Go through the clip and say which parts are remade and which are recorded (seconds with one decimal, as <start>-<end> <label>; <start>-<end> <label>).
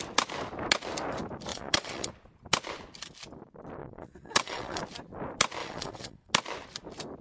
0.0-1.5 recorded; 1.5-2.1 remade; 2.1-3.8 recorded; 3.8-4.8 remade; 4.8-5.6 recorded; 5.6-6.3 remade; 6.3-7.2 recorded